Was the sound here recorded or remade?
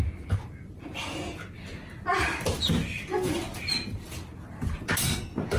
recorded